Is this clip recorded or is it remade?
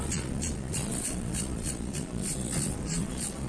remade